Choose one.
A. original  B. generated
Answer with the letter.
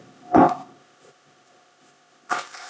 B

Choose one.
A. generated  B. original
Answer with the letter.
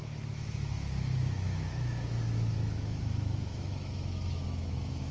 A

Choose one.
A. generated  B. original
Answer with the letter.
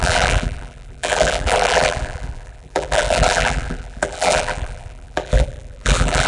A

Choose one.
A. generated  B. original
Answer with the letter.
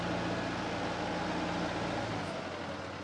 B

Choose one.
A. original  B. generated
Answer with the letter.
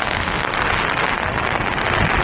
A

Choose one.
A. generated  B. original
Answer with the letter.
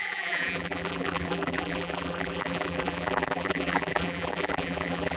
A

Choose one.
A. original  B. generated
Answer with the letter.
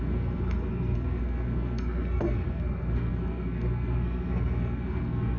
B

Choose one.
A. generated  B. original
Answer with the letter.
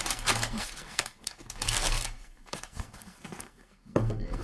A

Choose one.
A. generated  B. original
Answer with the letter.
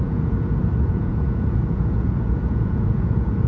A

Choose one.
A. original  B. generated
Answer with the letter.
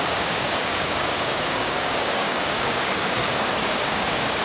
B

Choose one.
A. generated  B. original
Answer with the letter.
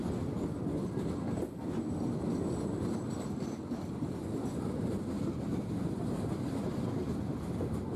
B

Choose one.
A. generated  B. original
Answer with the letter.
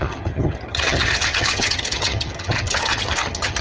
A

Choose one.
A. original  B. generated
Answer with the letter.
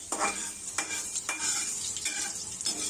B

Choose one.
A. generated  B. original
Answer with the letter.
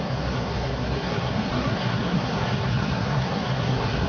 A